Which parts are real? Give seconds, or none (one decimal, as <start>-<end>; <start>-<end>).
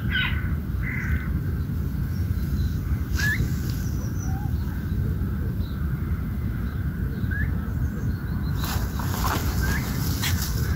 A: 0.0-10.8